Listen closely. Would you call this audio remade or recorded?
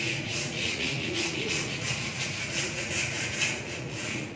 remade